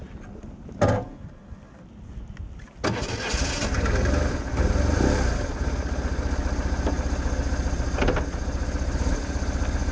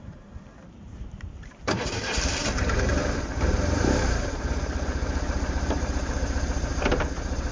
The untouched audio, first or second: first